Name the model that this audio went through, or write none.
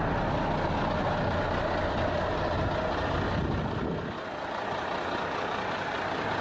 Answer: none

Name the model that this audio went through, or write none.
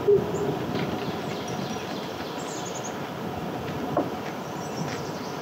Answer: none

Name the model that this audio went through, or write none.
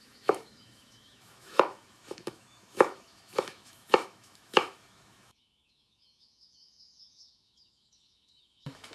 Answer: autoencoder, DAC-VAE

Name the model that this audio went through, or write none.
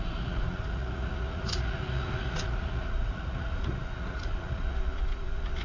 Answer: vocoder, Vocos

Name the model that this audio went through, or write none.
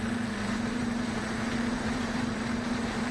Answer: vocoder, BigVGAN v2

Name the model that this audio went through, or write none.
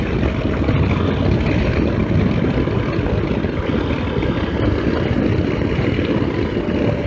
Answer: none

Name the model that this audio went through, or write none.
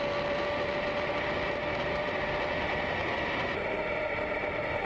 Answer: none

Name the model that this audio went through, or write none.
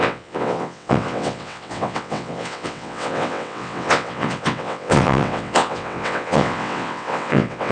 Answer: vocoder, WaveNeXt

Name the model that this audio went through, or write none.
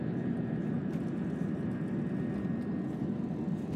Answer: none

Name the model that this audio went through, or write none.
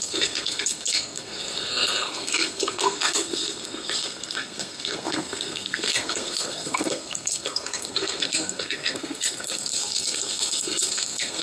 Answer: codec, SNAC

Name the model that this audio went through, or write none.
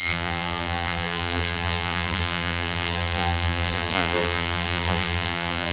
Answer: vocoder, BigVGAN v2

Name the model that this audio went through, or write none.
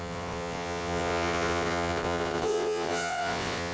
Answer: vocoder, WaveNeXt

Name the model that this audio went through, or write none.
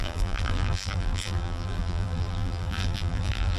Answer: vocoder, BigVGAN v2